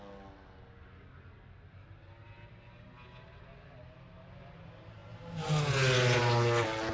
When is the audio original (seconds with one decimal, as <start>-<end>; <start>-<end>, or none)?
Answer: 0.0-6.9